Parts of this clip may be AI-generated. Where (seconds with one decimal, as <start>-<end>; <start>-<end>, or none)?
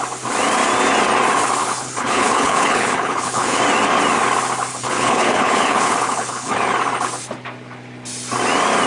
1.6-3.6; 4.7-6.7